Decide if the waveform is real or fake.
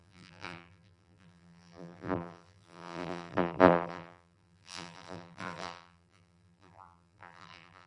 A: fake